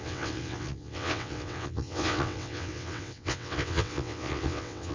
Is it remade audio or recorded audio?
remade